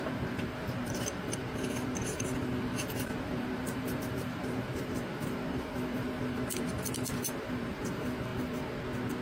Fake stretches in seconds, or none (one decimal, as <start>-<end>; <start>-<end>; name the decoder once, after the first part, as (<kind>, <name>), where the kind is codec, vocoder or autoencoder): 0.0-8.3 (vocoder, BigVGAN v2)